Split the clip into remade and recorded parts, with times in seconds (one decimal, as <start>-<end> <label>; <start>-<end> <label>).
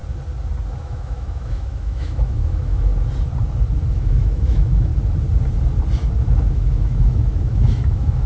0.0-0.8 recorded; 0.8-2.9 remade; 2.9-3.9 recorded; 3.9-4.9 remade; 4.9-6.5 recorded; 6.5-8.3 remade